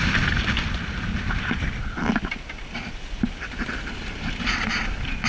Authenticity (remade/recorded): remade